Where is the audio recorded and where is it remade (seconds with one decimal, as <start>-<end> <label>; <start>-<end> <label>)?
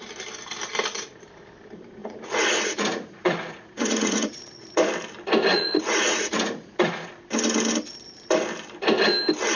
0.0-2.0 recorded; 2.0-4.9 remade; 4.9-5.5 recorded; 5.5-7.1 remade; 7.1-9.6 recorded